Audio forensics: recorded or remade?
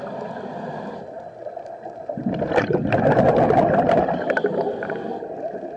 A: recorded